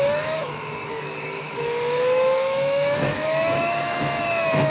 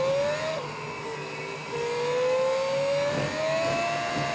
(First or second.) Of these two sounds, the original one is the second